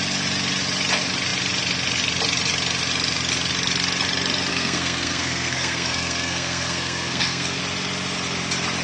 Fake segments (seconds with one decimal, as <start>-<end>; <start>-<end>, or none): 4.5-7.6